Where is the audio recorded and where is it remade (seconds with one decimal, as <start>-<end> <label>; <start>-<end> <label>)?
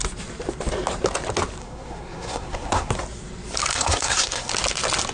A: 0.0-1.6 recorded; 1.6-2.9 remade; 2.9-3.7 recorded; 3.7-4.5 remade; 4.5-5.1 recorded